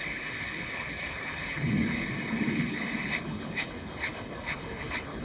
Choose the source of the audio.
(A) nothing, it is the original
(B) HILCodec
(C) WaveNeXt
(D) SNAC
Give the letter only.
B